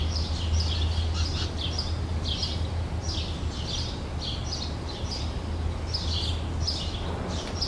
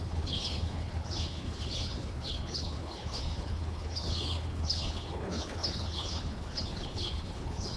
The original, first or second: first